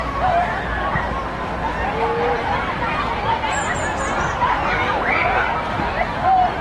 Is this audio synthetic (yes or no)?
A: no